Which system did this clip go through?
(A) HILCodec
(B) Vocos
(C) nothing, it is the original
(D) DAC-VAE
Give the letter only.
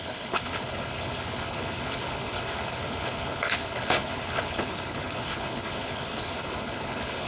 A